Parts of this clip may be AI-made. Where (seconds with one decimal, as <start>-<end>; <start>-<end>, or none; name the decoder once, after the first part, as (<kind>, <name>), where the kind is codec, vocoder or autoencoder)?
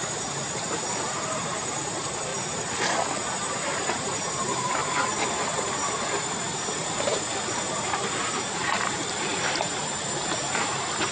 0.0-2.3 (vocoder, BigVGAN v2); 3.3-4.8; 5.4-11.1